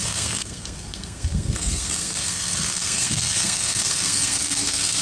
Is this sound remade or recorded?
remade